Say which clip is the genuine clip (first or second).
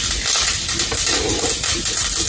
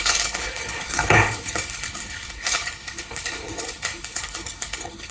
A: first